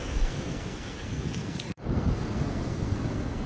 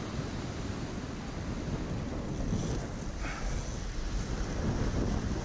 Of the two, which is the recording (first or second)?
second